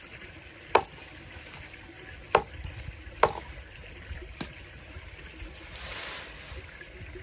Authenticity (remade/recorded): recorded